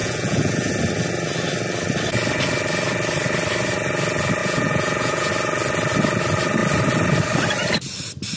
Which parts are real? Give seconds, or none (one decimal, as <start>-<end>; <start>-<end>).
0.7-4.4; 5.3-8.4